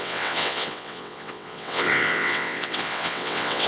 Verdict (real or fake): fake